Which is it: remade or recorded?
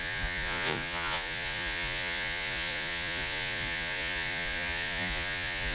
remade